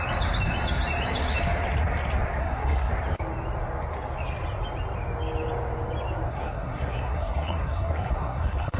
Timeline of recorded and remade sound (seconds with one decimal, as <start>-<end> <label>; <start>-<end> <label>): 0.0-2.4 recorded; 2.4-2.9 remade; 2.9-6.3 recorded; 6.3-8.8 remade